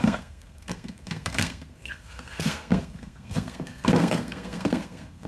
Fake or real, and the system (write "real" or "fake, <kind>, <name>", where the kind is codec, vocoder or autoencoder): fake, codec, SNAC